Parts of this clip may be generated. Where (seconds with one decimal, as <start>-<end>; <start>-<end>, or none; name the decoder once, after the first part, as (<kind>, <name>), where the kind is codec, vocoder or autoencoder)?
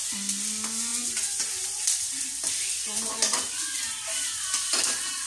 none